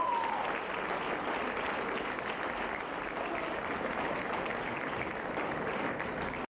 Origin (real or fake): real